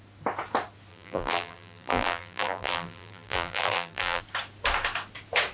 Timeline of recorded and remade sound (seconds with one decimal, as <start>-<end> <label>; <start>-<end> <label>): 0.0-0.9 recorded; 0.9-4.2 remade; 4.2-5.5 recorded